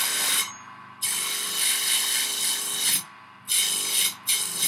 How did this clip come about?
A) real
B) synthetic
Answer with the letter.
A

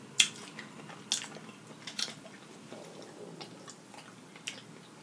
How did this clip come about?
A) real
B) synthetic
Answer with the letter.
A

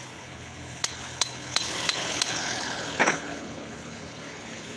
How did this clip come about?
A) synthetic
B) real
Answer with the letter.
A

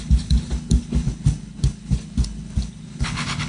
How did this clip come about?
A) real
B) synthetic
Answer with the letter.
B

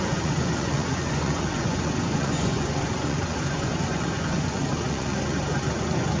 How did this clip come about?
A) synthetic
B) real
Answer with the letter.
A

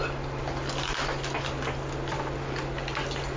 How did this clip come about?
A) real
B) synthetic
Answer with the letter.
A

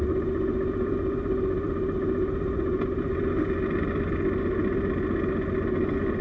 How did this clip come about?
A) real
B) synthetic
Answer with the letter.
A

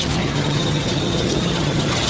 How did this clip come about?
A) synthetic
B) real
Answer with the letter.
A